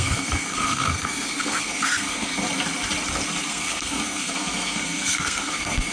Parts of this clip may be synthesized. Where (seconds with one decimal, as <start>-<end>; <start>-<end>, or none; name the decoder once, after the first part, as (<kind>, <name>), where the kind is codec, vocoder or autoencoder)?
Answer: 0.0-2.3 (codec, SNAC); 3.5-5.9